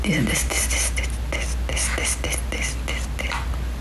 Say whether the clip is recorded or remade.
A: recorded